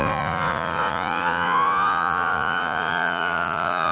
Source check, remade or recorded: remade